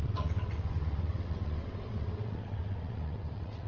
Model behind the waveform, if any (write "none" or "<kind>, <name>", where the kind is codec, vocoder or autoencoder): vocoder, WaveNeXt